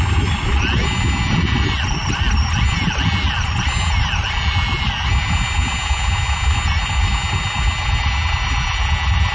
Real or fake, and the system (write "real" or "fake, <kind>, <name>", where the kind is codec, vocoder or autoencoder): real